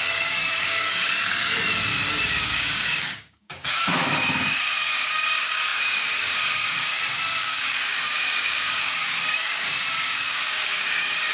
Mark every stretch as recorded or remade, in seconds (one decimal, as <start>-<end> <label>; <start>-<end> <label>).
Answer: 0.0-1.1 remade; 1.1-2.2 recorded; 2.2-11.3 remade